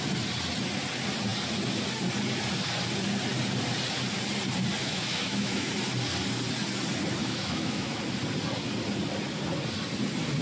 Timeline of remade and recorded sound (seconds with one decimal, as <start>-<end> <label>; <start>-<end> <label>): 0.0-4.8 recorded; 4.8-5.7 remade; 5.7-7.2 recorded; 7.2-8.0 remade; 8.0-10.4 recorded